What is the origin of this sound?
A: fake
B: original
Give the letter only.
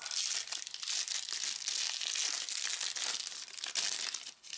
B